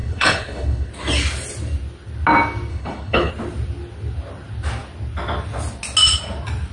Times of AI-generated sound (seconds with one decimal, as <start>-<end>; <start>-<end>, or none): 0.0-0.9; 2.7-3.3

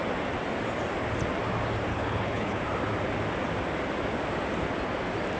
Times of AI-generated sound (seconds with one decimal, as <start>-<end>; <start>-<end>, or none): 1.9-2.6

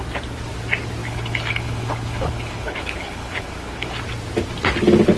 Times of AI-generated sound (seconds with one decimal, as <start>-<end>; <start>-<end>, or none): 1.0-4.0